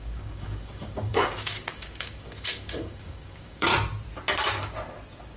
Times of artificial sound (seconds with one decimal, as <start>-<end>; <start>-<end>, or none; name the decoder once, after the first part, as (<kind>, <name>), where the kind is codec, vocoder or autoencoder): 0.0-3.7 (codec, DAC)